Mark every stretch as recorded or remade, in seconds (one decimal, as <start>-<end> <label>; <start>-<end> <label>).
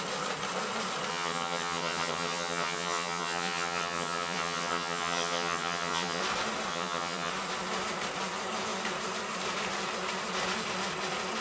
0.0-1.1 recorded; 1.1-6.2 remade; 6.2-6.7 recorded; 6.7-7.3 remade; 7.3-11.4 recorded